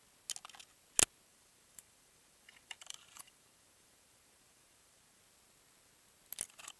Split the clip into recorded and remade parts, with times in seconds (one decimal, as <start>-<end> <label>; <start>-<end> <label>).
0.0-1.3 recorded; 1.3-5.2 remade; 5.2-6.8 recorded